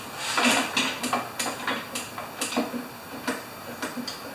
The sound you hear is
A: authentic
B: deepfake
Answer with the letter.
A